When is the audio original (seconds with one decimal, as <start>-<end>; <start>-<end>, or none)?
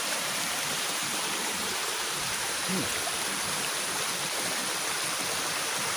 2.9-3.5; 4.6-5.5